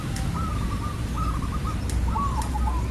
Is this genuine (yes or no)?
yes